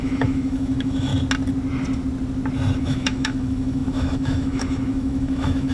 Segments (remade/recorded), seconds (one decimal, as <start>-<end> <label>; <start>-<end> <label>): 0.0-1.1 remade; 1.1-2.8 recorded; 2.8-5.7 remade